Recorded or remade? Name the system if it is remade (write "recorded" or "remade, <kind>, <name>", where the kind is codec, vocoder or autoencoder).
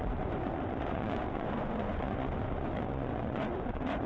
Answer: remade, vocoder, Vocos